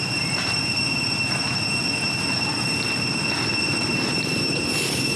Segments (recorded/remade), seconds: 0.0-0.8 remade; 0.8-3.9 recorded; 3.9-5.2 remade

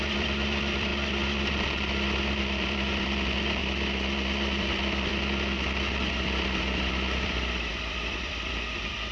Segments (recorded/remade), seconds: 0.0-0.9 remade; 0.9-1.5 recorded; 1.5-3.6 remade; 3.6-4.6 recorded; 4.6-5.1 remade; 5.1-6.1 recorded; 6.1-9.1 remade